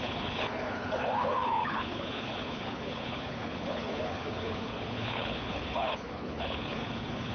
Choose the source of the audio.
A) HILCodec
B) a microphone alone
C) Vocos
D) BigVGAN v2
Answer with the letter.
A